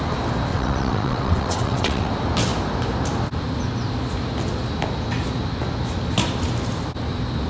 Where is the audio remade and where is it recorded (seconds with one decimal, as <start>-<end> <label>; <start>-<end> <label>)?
0.0-0.5 recorded; 0.5-2.1 remade; 2.1-7.5 recorded